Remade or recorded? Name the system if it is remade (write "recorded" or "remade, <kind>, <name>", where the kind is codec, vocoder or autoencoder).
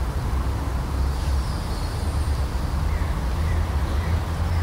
recorded